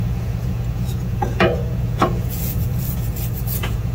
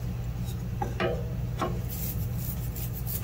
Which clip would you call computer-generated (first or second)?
first